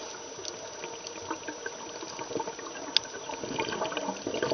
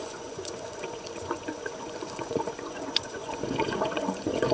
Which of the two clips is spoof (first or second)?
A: second